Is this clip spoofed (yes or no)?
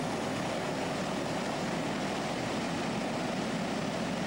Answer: no